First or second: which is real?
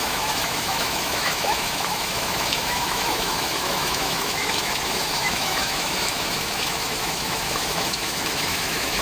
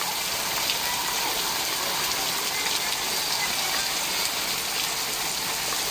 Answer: second